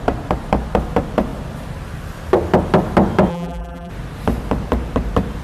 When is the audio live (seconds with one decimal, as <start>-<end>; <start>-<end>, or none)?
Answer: 0.0-3.3; 3.9-5.4